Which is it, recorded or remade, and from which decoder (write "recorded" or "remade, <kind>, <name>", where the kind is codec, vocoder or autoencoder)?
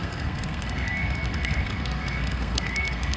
remade, codec, SNAC